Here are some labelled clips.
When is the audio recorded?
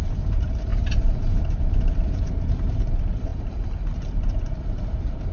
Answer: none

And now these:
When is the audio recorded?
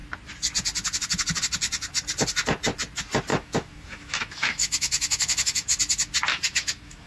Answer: 0.0-3.3; 5.8-6.3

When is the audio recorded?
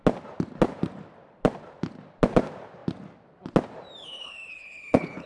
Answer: 0.0-4.0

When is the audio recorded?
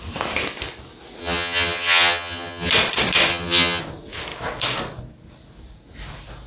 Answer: 0.0-1.2; 2.7-3.3; 3.8-6.5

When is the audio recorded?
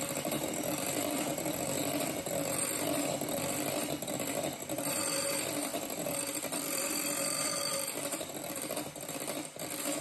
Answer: none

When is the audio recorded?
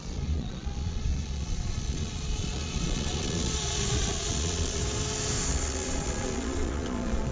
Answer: 4.8-5.5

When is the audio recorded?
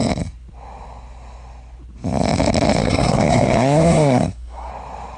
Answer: 0.0-2.8; 4.7-5.2